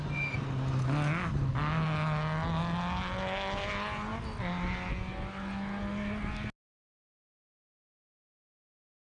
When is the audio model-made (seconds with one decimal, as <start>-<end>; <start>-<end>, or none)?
none